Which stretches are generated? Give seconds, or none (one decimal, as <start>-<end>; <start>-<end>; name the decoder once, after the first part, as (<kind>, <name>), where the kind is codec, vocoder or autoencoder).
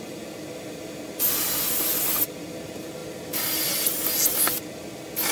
none